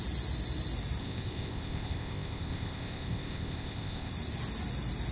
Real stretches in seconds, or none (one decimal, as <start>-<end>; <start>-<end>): 0.0-1.0; 4.1-5.1